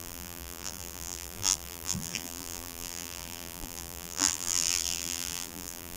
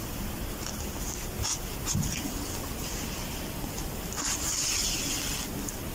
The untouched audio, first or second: second